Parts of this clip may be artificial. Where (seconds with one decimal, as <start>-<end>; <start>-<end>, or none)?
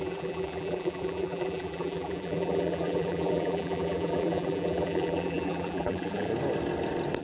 0.0-6.3